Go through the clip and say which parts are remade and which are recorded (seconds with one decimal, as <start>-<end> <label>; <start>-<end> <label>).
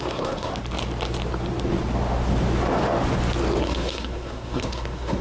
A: 0.0-0.5 remade; 0.5-3.6 recorded; 3.6-5.2 remade